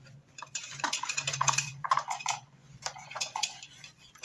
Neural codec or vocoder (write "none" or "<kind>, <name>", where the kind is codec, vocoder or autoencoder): vocoder, Vocos